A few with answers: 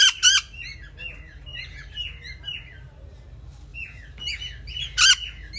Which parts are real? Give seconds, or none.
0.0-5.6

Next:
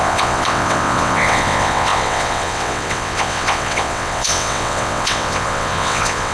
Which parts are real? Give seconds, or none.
none

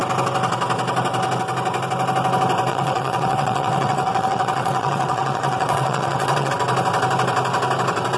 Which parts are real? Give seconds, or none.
0.0-2.7; 6.5-8.2

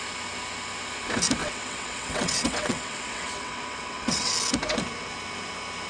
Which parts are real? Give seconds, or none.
0.0-1.4; 4.3-5.9

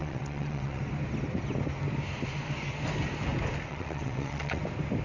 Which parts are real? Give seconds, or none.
0.8-3.7; 4.6-5.0

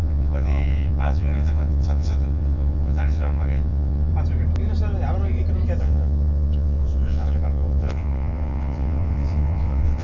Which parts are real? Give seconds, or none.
4.1-5.8

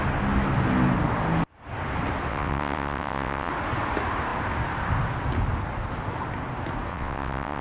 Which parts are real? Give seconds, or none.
0.0-2.3; 3.5-6.9

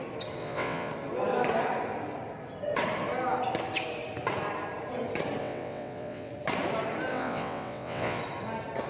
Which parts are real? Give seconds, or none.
0.0-0.4; 0.9-5.4; 6.3-7.1; 8.2-8.9